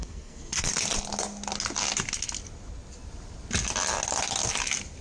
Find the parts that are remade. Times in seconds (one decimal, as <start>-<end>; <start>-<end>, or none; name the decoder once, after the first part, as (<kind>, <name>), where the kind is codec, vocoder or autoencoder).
0.0-0.7 (codec, SNAC)